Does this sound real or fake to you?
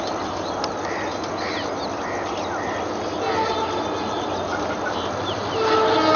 real